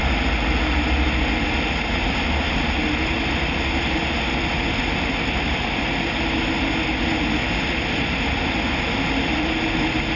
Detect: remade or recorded recorded